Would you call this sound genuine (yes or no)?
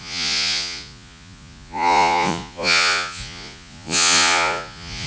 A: no